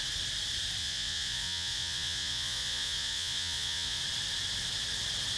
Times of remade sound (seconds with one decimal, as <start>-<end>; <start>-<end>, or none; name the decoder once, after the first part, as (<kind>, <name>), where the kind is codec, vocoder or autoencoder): 0.8-4.0 (vocoder, Vocos)